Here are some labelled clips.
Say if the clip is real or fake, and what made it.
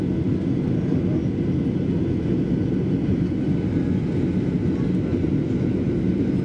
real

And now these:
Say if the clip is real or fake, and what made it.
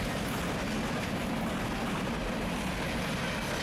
real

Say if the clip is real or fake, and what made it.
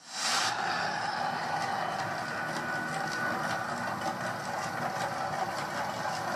real